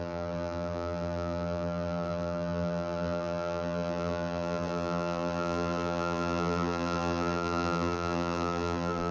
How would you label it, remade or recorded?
remade